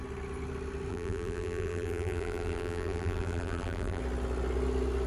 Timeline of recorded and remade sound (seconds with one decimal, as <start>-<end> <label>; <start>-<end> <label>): 0.0-0.9 recorded; 0.9-4.0 remade; 4.0-5.1 recorded